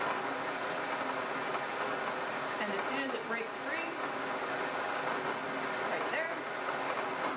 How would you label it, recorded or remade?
recorded